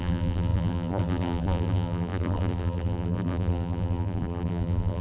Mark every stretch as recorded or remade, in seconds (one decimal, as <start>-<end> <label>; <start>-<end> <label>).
0.0-5.0 remade